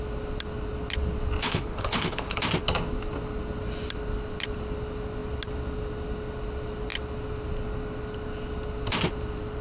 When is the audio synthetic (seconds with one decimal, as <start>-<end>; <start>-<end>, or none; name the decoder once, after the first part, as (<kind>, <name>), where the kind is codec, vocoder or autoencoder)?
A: 1.4-2.4 (codec, HILCodec)